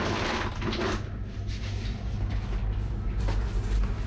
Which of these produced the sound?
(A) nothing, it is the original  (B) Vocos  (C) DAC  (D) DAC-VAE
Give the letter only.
A